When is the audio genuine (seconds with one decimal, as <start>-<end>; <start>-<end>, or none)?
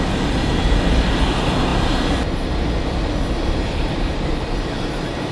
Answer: 0.0-5.3